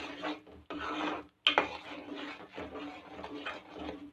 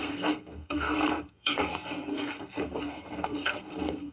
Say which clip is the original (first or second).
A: first